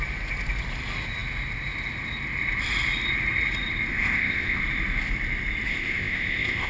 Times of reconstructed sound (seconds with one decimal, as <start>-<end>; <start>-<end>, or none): 3.9-4.6; 5.7-6.7